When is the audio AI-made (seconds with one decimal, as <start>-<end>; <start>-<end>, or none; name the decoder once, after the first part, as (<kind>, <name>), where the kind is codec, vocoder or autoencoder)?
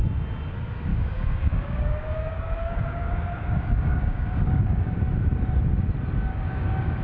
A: 0.9-5.0 (codec, DAC); 6.3-7.0